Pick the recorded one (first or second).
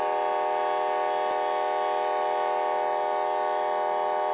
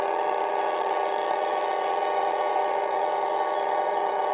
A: first